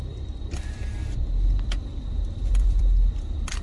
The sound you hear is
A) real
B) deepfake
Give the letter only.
B